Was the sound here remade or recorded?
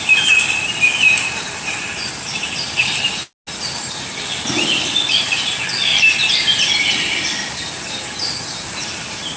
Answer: recorded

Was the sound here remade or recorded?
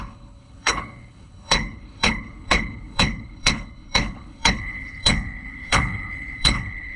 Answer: remade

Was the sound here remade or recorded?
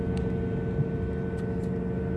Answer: recorded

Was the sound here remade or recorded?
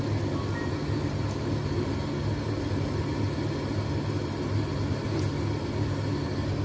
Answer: recorded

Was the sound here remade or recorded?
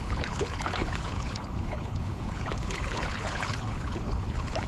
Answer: remade